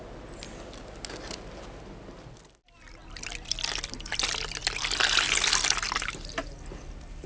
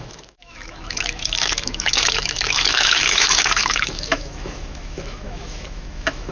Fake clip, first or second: second